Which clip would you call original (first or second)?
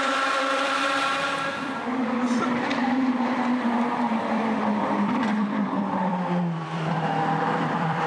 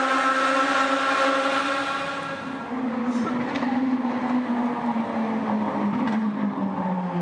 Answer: second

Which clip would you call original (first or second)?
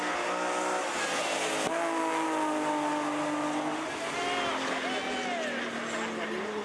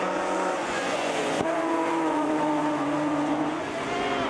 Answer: first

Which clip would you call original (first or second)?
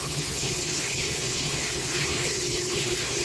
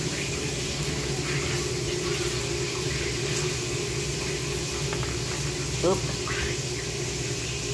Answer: second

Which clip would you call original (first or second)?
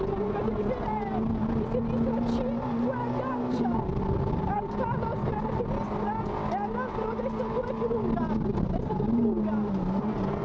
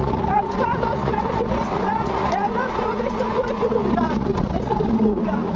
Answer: first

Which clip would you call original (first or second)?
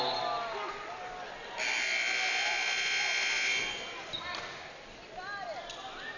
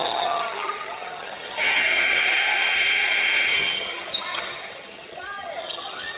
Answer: first